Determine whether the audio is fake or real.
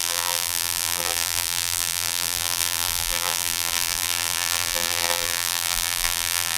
fake